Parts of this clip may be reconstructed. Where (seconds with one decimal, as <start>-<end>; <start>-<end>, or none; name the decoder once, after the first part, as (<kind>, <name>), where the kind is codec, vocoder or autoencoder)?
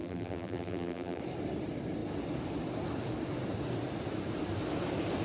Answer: 0.0-1.2 (vocoder, BigVGAN v2)